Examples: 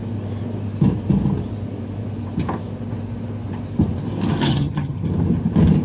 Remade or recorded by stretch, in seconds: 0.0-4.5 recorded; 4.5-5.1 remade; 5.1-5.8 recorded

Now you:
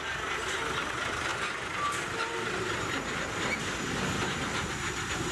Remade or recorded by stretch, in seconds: 0.0-5.3 recorded

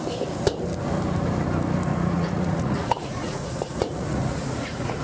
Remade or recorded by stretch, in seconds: 0.0-1.9 recorded; 1.9-5.0 remade

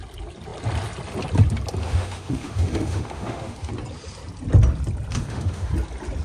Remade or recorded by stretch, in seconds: 0.0-1.8 recorded; 1.8-3.7 remade; 3.7-5.1 recorded; 5.1-5.7 remade; 5.7-6.2 recorded